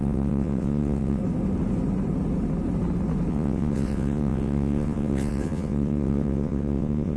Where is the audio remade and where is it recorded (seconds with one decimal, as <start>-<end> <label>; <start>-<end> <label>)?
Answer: 0.0-1.2 remade; 1.2-3.3 recorded; 3.3-7.2 remade

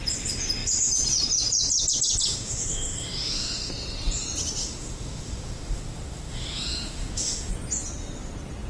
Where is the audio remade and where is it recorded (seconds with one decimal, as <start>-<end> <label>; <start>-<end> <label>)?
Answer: 0.0-2.3 recorded; 2.3-3.7 remade; 3.7-4.6 recorded; 4.6-7.5 remade; 7.5-8.7 recorded

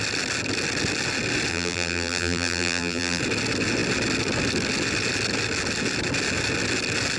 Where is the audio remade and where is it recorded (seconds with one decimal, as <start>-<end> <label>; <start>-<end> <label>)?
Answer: 0.0-1.5 recorded; 1.5-3.2 remade; 3.2-7.2 recorded

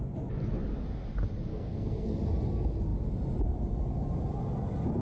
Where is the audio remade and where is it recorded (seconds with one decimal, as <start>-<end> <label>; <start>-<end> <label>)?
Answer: 0.0-1.5 recorded; 1.5-2.2 remade; 2.2-5.0 recorded

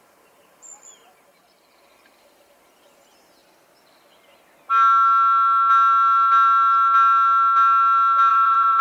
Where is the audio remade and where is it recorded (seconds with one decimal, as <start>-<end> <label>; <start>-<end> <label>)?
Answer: 0.0-3.4 remade; 3.4-8.3 recorded; 8.3-8.8 remade